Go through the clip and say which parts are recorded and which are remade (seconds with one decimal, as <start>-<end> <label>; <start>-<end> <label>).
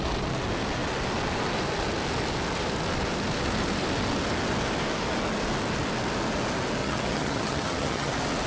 0.0-6.8 recorded; 6.8-8.1 remade; 8.1-8.5 recorded